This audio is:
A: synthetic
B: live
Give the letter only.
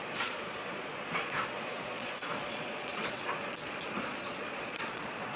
A